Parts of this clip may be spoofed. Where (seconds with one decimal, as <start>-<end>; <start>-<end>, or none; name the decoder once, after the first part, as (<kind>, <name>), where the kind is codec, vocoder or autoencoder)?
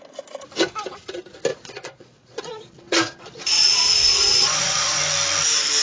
1.5-5.0 (vocoder, Vocos)